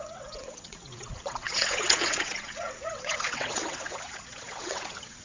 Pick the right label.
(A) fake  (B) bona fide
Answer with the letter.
A